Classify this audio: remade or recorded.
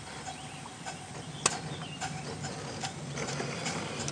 recorded